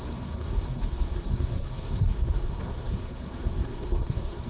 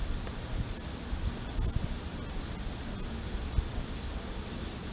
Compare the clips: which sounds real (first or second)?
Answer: second